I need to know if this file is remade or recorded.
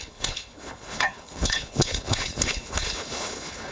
remade